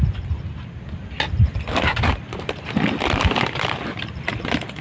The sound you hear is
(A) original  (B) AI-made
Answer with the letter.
A